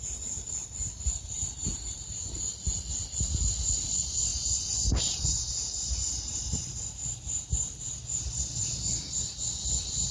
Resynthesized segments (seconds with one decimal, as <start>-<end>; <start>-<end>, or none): 0.6-2.4; 4.3-8.4